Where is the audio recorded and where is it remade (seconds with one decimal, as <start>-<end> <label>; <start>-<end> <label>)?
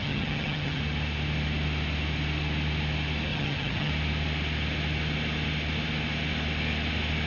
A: 0.0-0.8 remade; 0.8-3.3 recorded; 3.3-3.9 remade; 3.9-7.3 recorded